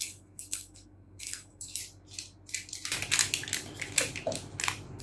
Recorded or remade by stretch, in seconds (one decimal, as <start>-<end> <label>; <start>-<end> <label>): 0.0-1.8 remade; 1.8-5.0 recorded